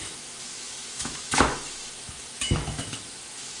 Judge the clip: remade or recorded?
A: remade